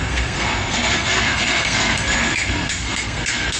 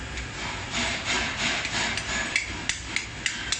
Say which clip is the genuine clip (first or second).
second